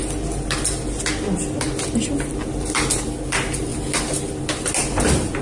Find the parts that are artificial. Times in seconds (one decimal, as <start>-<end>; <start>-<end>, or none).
none